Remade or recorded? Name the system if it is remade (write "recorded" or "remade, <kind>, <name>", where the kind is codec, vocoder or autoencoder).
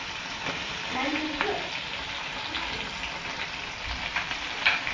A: recorded